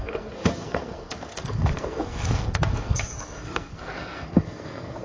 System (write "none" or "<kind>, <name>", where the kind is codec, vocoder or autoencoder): codec, SNAC